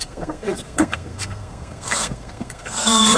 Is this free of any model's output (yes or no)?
no